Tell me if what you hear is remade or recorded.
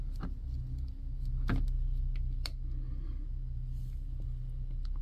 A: recorded